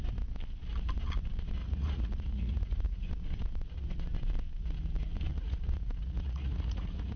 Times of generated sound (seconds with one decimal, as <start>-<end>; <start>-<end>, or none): 1.6-3.1; 5.3-7.2